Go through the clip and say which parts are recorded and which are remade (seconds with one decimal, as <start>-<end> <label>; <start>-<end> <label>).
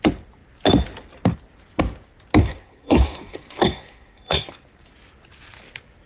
0.0-2.4 recorded; 2.4-4.5 remade; 4.5-6.1 recorded